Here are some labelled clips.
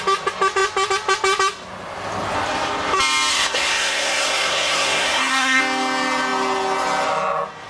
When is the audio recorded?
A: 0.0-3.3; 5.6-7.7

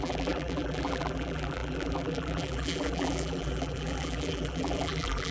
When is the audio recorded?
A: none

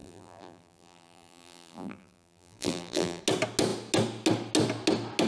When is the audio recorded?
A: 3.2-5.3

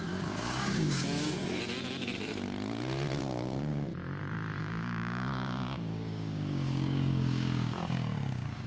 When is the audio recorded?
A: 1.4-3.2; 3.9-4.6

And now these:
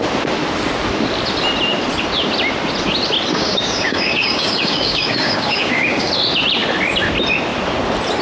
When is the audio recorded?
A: 0.0-3.3; 6.1-8.2

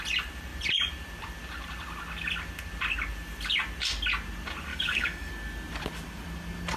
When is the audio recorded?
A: 0.0-4.7; 5.3-6.8

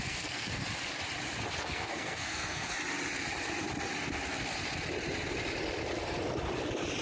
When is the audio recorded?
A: 0.6-1.6; 2.7-7.0